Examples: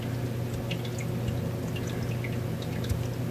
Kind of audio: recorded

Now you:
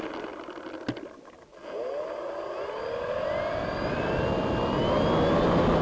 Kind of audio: recorded